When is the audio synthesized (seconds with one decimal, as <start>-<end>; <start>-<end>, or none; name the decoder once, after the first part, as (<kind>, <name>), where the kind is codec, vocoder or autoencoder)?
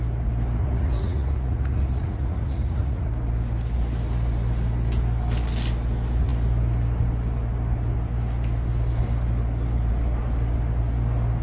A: 0.6-3.1 (vocoder, Vocos)